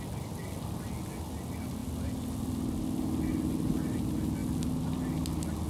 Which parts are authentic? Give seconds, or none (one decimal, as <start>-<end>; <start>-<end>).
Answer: 0.0-5.7